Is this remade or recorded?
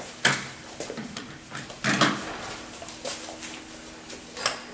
recorded